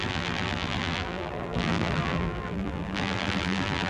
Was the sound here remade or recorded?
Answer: remade